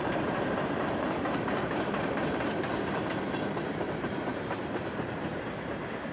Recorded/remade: remade